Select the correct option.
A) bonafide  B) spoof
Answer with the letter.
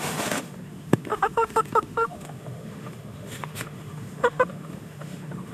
B